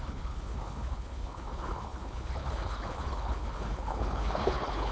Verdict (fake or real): fake